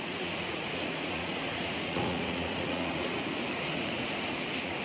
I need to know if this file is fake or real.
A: fake